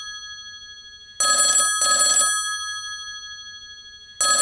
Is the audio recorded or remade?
recorded